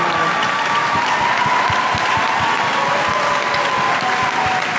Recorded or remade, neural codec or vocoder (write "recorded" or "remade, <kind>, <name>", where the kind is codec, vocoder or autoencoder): recorded